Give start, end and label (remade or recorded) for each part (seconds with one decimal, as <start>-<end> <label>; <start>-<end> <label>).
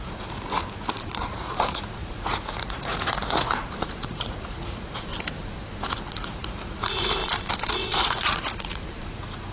0.0-5.1 remade; 5.1-5.8 recorded; 5.8-7.2 remade; 7.2-7.7 recorded; 7.7-9.5 remade